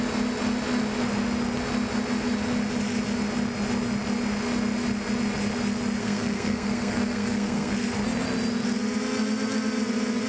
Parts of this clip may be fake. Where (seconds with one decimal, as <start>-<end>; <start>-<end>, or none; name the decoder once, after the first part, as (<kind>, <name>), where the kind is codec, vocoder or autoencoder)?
6.0-7.7 (codec, SNAC)